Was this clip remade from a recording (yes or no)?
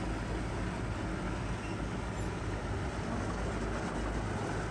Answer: no